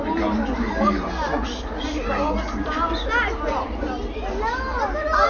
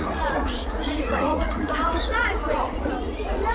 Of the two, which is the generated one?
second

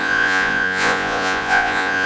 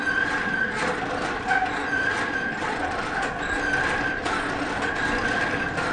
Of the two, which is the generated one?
first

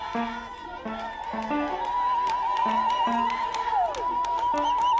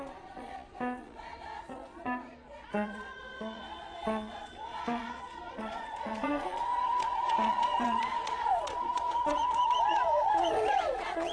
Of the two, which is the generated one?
second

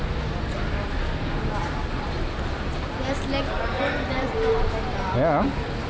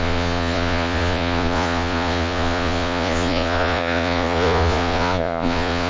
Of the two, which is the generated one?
second